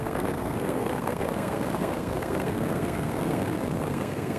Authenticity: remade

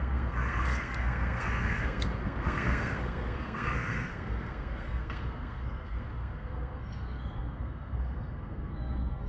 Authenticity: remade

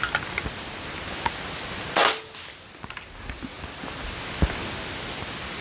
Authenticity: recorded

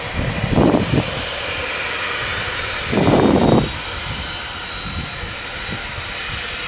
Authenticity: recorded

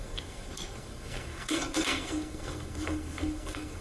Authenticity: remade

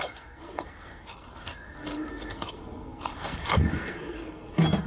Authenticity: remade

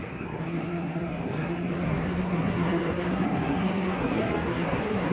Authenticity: remade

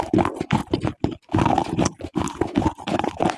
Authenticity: recorded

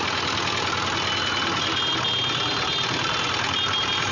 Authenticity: recorded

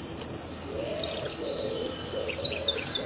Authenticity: recorded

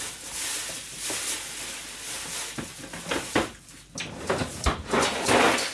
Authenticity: recorded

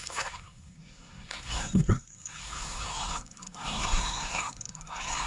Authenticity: remade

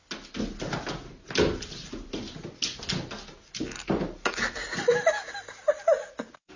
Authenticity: recorded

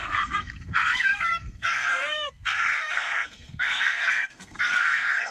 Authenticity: remade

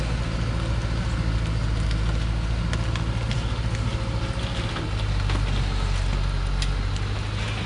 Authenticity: recorded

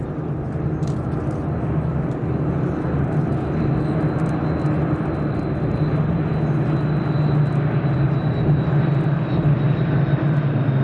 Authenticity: recorded